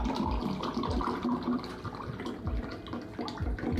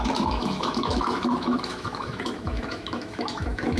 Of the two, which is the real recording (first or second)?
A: first